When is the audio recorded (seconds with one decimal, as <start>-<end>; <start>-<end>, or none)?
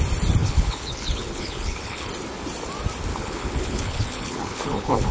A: 0.0-0.4; 2.1-3.1